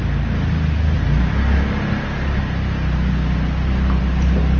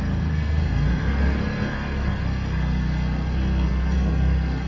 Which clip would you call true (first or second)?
first